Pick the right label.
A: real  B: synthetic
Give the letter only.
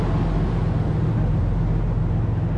A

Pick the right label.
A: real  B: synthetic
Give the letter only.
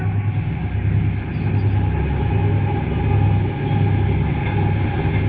A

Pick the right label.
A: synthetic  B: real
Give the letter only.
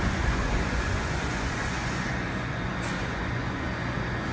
A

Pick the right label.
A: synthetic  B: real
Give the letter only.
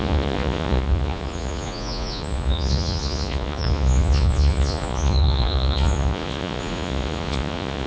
A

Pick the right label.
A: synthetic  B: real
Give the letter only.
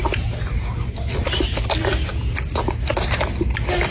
B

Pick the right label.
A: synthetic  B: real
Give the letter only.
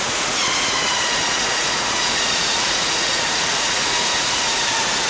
A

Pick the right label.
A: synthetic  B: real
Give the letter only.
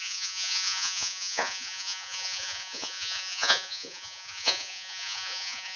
A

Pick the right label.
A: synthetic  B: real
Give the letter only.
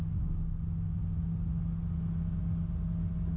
B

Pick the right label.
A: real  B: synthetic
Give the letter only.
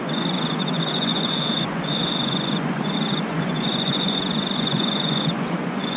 B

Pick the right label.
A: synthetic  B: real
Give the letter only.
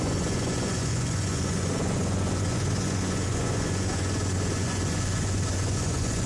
A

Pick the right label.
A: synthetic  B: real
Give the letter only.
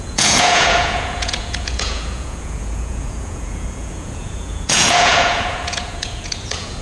A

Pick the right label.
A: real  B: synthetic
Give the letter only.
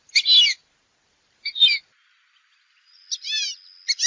A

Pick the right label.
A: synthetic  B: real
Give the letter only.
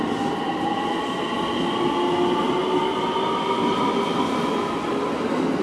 B